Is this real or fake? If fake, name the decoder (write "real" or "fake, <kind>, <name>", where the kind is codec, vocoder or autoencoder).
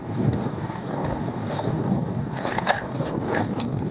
fake, codec, DAC